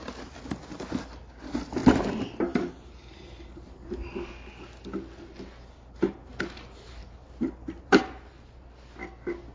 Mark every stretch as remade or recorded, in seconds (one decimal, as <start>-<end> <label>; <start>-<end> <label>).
0.0-7.0 recorded; 7.0-8.8 remade; 8.8-9.5 recorded